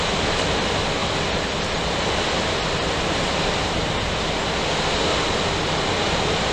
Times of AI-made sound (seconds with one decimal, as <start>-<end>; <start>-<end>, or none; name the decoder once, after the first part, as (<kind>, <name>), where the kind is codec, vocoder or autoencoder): none